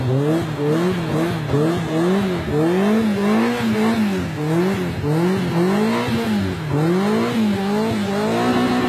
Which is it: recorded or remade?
recorded